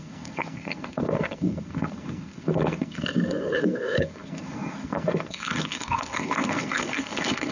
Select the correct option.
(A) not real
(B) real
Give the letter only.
A